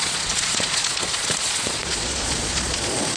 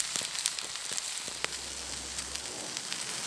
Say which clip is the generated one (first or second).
first